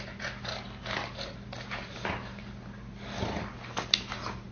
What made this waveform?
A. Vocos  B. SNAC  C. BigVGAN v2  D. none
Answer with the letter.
D